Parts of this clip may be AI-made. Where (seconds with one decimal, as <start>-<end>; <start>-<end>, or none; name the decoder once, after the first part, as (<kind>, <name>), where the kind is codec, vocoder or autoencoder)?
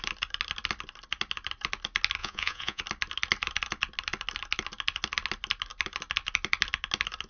2.2-2.8 (vocoder, Vocos)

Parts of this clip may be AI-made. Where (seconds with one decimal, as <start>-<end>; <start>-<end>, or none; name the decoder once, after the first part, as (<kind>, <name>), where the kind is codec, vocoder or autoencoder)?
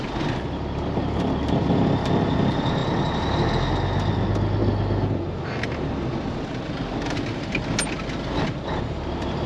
none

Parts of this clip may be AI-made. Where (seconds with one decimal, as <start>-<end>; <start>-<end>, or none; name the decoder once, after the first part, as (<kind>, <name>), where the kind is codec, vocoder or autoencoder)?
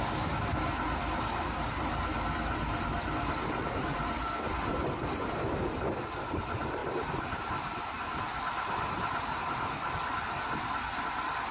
none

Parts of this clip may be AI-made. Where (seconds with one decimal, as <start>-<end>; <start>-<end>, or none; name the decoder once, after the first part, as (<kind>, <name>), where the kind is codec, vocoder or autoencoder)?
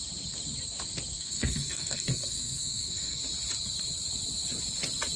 1.1-3.2 (codec, SNAC)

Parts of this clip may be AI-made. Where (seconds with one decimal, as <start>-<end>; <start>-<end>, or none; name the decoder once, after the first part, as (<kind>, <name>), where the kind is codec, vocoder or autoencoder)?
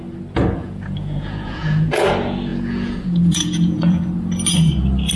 0.6-2.1 (vocoder, Vocos); 2.5-4.0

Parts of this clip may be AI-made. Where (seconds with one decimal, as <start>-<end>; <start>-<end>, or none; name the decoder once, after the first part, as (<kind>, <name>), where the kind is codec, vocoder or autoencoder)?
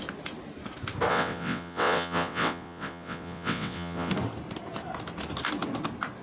1.1-4.1 (vocoder, WaveNeXt)